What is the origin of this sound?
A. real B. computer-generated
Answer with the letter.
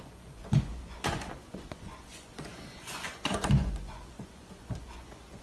B